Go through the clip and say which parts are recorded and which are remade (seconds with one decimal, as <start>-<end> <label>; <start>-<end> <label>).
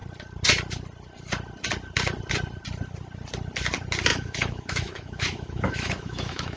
0.0-4.1 recorded; 4.1-6.6 remade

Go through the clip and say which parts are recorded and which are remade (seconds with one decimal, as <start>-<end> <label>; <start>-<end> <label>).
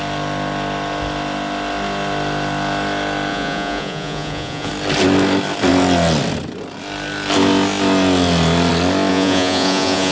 0.0-3.3 recorded; 3.3-4.7 remade; 4.7-9.1 recorded; 9.1-10.1 remade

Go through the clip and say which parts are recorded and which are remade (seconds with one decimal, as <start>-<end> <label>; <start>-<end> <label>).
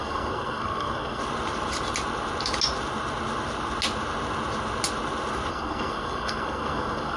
0.0-1.2 remade; 1.2-5.5 recorded; 5.5-7.2 remade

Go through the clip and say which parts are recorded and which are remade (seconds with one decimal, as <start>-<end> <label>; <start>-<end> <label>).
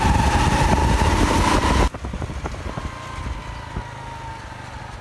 0.0-5.0 recorded